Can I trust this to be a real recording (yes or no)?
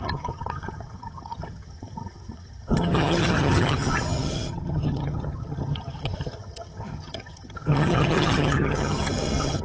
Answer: no